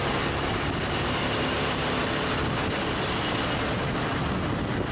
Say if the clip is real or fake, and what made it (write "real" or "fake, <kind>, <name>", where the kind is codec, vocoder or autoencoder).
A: real